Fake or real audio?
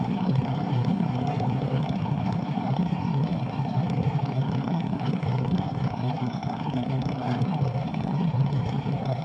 fake